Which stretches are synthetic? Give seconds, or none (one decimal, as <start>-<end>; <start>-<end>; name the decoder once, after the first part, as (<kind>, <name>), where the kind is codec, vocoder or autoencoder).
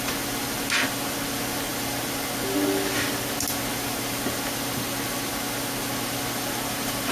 none